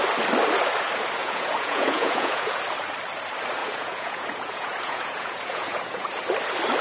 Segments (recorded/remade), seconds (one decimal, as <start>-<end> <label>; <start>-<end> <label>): 0.0-1.2 recorded; 1.2-2.6 remade; 2.6-3.6 recorded; 3.6-6.1 remade; 6.1-6.8 recorded